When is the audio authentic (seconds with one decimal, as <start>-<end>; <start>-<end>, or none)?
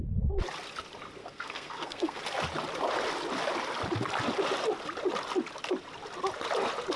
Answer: 0.0-1.2; 2.2-7.0